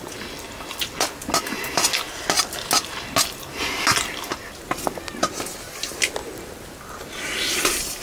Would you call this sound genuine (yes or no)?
yes